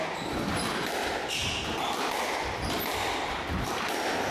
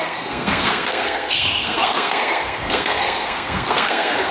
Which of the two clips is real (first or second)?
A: first